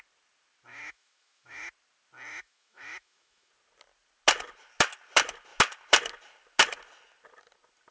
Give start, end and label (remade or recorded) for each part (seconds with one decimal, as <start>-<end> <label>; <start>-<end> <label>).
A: 0.0-0.7 recorded; 0.7-1.7 remade; 1.7-2.3 recorded; 2.3-3.5 remade; 3.5-7.9 recorded